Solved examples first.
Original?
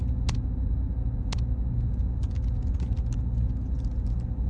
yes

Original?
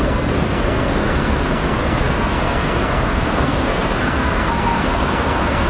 no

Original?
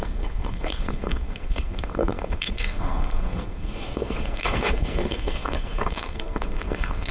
no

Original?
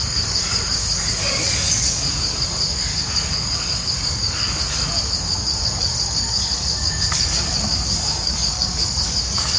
no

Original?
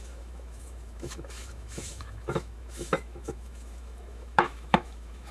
no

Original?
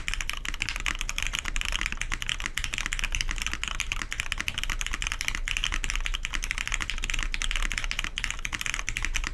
yes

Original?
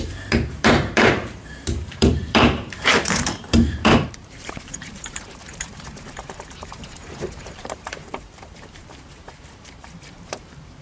no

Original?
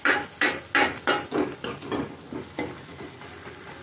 yes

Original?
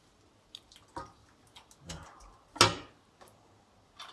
yes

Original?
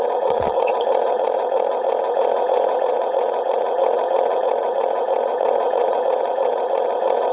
no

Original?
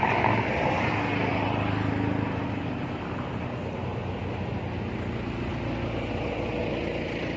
yes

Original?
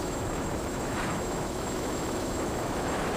no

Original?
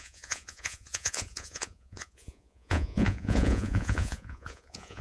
no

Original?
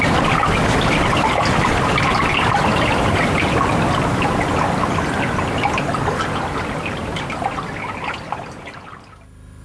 yes